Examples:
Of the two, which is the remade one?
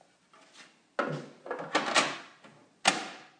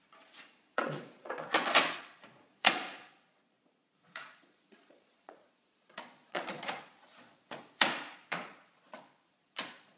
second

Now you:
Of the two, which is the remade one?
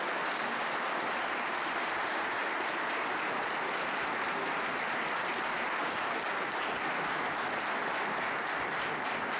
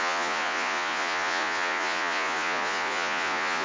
second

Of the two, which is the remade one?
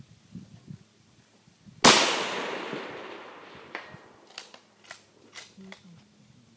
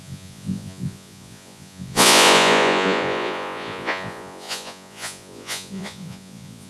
second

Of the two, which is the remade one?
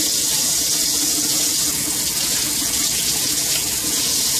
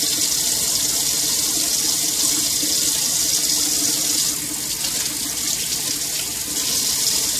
first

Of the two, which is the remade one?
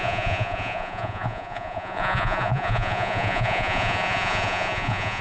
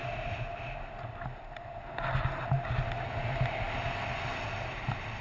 first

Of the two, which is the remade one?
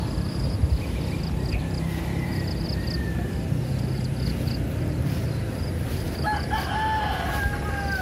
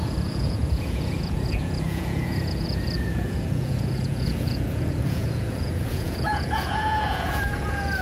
second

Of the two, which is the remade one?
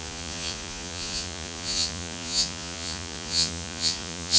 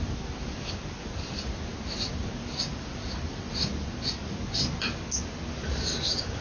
first